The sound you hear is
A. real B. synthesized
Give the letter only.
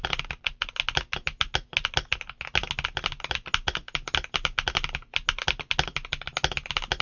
A